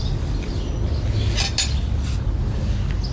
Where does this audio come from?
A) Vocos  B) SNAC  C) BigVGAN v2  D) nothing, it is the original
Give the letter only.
D